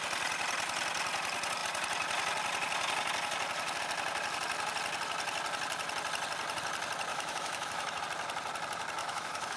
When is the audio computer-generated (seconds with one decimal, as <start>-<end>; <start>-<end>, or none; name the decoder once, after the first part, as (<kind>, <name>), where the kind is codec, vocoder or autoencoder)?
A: 7.1-8.0 (autoencoder, DAC-VAE); 9.0-9.6